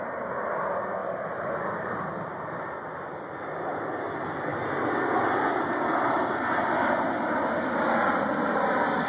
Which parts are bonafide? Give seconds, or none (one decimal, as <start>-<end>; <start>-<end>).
0.0-1.0; 2.5-9.1